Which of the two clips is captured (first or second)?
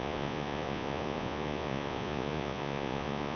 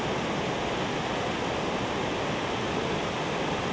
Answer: second